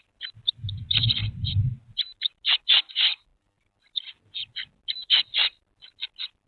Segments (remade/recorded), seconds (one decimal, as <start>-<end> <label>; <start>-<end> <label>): 0.0-6.5 recorded